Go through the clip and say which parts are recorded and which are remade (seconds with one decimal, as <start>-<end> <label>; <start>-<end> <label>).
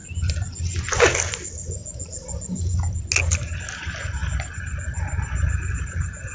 0.0-6.3 recorded